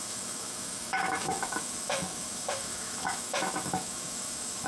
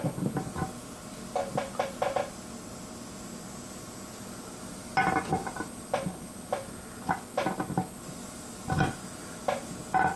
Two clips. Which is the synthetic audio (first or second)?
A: first